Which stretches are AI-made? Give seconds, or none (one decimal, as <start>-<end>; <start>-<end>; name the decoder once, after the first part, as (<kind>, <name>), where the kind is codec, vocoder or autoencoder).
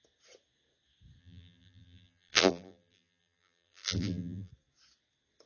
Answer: 1.2-4.5 (vocoder, BigVGAN v2)